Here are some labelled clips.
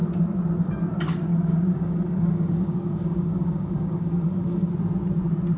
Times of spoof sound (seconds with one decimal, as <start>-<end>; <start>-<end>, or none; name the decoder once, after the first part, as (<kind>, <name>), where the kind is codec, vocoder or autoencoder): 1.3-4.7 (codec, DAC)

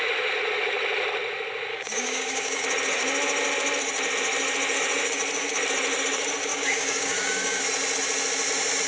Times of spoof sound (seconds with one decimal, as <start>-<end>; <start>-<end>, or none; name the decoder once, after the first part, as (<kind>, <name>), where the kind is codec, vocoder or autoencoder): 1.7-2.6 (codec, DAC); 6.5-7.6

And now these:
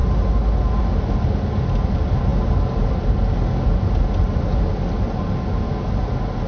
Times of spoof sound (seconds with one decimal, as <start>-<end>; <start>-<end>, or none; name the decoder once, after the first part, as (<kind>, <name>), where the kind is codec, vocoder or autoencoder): none

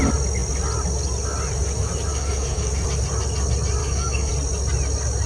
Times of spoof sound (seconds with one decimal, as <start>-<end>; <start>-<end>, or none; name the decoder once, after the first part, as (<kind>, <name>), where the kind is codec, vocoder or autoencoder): 2.1-2.7 (codec, DAC); 3.8-4.3

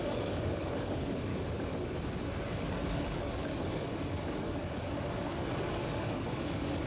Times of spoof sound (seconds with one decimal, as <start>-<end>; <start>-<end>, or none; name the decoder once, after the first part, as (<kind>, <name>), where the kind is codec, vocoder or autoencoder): 0.0-1.3 (codec, DAC); 2.4-6.9

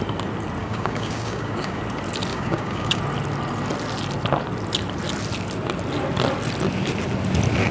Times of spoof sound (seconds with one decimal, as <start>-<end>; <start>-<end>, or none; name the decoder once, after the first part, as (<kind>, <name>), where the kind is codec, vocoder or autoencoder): 0.6-1.8 (codec, DAC); 2.3-3.0